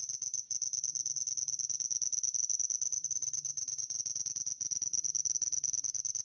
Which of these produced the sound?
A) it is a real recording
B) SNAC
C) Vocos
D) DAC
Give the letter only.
A